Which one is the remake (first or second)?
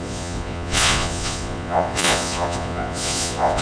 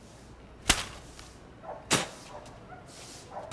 first